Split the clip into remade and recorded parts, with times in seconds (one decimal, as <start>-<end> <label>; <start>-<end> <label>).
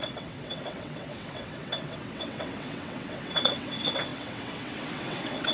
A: 0.0-5.5 remade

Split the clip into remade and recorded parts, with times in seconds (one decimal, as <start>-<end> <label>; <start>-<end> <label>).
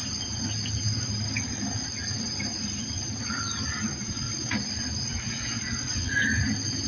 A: 0.0-4.0 recorded; 4.0-4.5 remade; 4.5-5.1 recorded; 5.1-6.1 remade; 6.1-6.9 recorded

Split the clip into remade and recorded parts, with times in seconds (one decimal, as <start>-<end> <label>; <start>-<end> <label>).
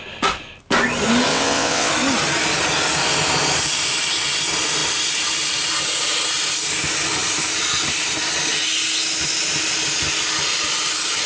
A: 0.0-1.3 recorded; 1.3-1.9 remade; 1.9-11.3 recorded